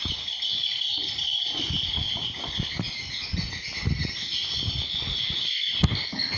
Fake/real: real